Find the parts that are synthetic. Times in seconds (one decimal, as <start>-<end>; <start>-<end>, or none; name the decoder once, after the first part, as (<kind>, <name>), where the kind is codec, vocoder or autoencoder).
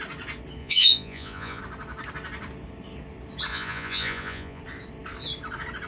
0.6-1.6 (vocoder, Vocos); 3.5-4.6